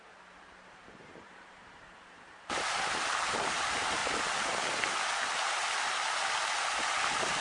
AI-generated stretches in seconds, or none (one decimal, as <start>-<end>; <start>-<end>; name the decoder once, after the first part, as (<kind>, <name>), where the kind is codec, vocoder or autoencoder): 0.0-4.0 (vocoder, BigVGAN v2)